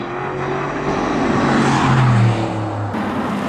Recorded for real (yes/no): yes